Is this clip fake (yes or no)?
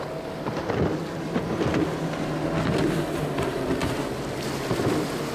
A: no